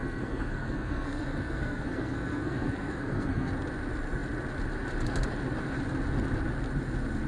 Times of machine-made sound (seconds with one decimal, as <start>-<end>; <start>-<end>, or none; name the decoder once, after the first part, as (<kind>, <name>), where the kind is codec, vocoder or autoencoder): 0.0-3.5 (codec, SNAC)

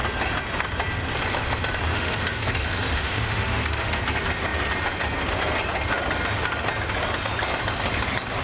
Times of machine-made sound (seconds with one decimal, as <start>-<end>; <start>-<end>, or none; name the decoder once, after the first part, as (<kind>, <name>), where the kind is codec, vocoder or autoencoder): 1.9-2.4 (autoencoder, DAC-VAE); 2.9-4.0

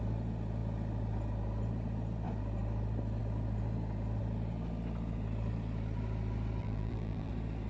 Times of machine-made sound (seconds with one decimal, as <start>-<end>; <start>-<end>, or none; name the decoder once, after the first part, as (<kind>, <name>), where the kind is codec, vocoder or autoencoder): 6.6-7.3 (vocoder, BigVGAN v2)

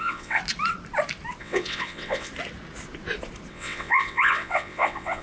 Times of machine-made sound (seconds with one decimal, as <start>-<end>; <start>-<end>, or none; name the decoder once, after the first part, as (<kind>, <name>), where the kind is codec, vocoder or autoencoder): 0.0-0.4 (vocoder, WaveNeXt); 1.4-2.3; 3.5-5.2